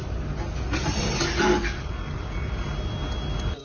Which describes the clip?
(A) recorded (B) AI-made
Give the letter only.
A